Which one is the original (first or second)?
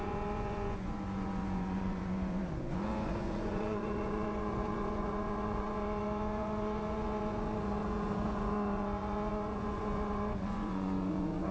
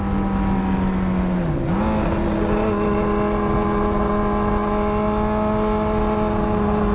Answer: second